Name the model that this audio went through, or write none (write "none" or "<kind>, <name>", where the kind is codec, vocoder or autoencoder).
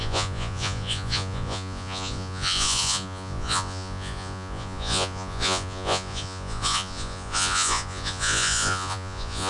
vocoder, Vocos